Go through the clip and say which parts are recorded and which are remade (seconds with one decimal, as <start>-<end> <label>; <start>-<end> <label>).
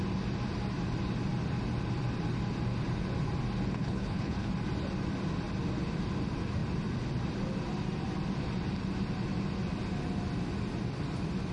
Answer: 0.0-3.7 recorded; 3.7-4.5 remade; 4.5-11.5 recorded